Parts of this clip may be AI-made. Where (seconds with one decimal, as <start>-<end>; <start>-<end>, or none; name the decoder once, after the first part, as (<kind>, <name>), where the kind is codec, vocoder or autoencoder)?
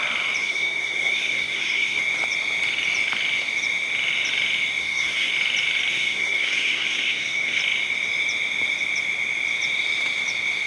0.4-2.0 (codec, SNAC); 4.8-5.3; 5.9-7.6